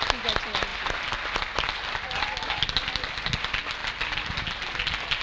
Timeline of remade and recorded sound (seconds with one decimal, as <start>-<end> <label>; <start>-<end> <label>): 0.0-5.2 recorded